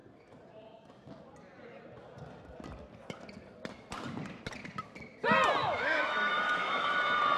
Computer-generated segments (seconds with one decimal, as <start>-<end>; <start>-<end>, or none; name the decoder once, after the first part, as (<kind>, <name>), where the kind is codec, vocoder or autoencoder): 5.6-7.0 (autoencoder, DAC-VAE)